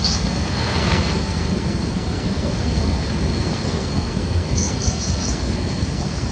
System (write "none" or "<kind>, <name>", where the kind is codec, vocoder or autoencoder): codec, SNAC